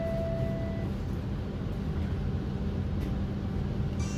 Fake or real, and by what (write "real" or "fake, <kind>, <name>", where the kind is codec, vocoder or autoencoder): real